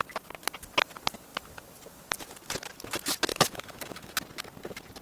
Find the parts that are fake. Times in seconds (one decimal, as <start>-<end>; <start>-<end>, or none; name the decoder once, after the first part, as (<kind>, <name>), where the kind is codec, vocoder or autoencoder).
3.3-4.1 (autoencoder, DAC-VAE)